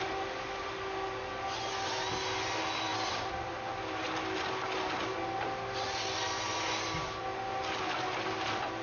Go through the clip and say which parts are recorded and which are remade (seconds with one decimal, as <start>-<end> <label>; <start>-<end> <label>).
0.0-8.8 recorded